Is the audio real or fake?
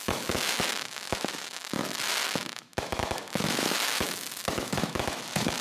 fake